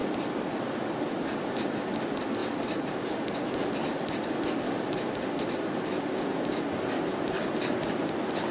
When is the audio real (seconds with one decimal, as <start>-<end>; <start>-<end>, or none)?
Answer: 0.0-8.5

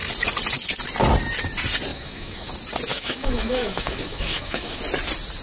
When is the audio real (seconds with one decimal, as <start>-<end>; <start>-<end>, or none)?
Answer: 0.0-1.9; 2.5-2.9; 4.8-5.4

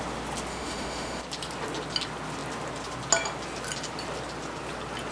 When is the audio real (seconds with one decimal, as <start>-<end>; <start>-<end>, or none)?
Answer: 0.0-0.5; 1.2-5.1

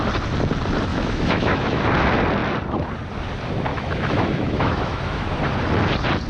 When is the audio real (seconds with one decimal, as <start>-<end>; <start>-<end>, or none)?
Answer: 0.0-0.9; 1.8-3.7; 5.3-6.3

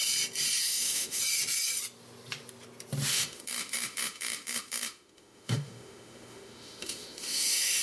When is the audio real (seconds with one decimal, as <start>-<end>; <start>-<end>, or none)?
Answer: 0.0-0.6; 1.2-3.1

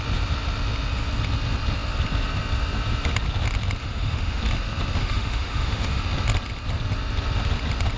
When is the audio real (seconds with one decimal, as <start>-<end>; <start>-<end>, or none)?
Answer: 0.0-3.8; 4.4-5.0; 6.0-8.0

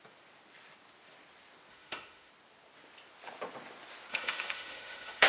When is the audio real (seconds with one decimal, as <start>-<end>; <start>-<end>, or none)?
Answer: 0.0-1.7; 2.3-4.1

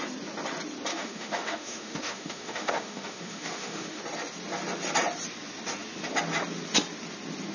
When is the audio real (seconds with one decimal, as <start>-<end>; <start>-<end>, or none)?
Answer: 0.0-0.9; 4.0-7.5